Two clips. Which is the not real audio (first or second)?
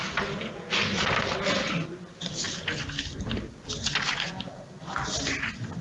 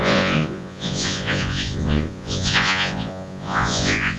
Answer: second